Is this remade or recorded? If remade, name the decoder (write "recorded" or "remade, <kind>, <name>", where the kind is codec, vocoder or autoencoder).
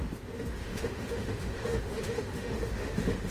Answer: remade, autoencoder, DAC-VAE